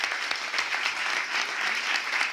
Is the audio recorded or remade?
recorded